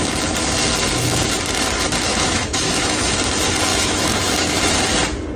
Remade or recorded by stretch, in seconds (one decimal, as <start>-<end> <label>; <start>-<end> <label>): 0.0-2.1 recorded; 2.1-3.1 remade; 3.1-3.7 recorded; 3.7-4.6 remade; 4.6-5.4 recorded